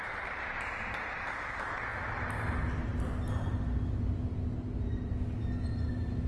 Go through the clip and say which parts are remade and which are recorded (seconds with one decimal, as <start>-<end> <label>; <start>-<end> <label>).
0.0-6.3 recorded